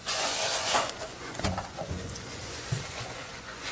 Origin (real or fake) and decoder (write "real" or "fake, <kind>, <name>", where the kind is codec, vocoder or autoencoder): fake, vocoder, Vocos